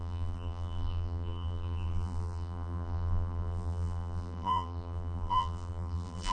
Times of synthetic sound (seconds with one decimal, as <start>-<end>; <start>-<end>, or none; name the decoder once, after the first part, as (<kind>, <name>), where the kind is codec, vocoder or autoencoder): 0.0-6.3 (vocoder, BigVGAN v2)